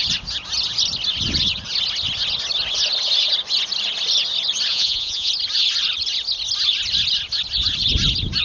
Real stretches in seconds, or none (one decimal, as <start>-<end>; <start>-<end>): 0.0-4.7; 5.3-8.4

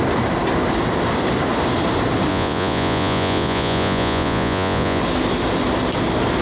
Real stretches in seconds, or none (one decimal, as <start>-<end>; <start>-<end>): 0.0-2.3; 5.0-6.4